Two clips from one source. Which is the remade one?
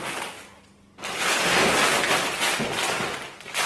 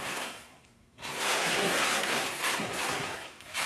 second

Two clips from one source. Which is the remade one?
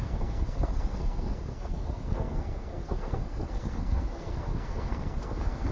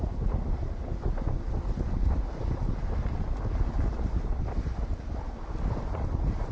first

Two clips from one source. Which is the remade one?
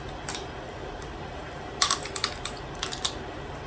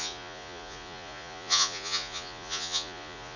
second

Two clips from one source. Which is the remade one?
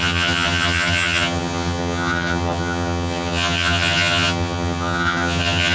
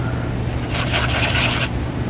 first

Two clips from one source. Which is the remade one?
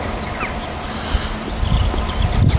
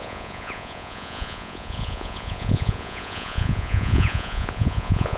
second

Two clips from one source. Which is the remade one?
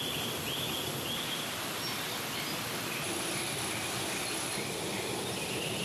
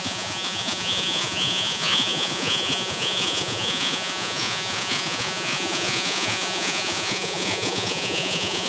second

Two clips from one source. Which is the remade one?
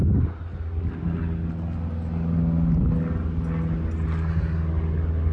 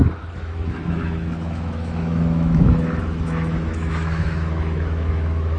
second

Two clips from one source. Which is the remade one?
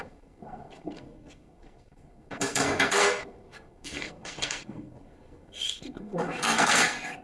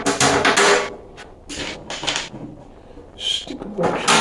first